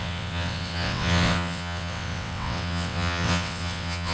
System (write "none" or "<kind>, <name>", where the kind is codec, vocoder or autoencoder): vocoder, WaveNeXt